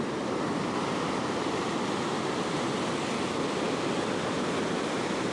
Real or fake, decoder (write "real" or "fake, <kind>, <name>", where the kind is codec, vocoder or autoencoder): real